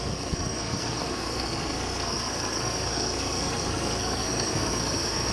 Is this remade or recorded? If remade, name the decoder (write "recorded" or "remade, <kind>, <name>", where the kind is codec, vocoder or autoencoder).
remade, codec, SNAC